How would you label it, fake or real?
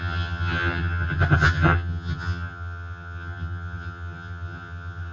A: fake